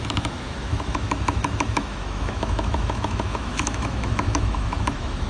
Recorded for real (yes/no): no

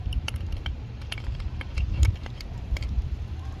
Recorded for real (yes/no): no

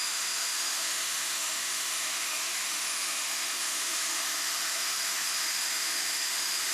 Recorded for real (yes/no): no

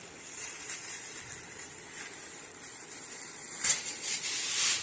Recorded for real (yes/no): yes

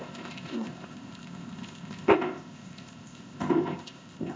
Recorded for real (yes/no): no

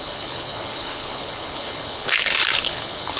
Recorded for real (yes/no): no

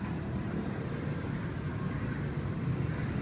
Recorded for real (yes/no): yes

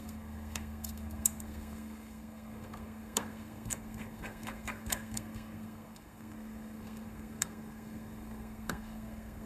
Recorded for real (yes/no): no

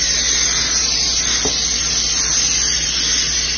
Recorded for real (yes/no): yes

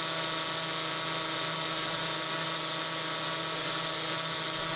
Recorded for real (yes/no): yes